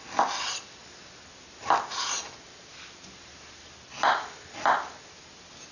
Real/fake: real